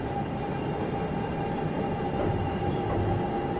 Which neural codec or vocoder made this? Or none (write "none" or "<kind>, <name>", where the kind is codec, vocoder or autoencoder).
vocoder, BigVGAN v2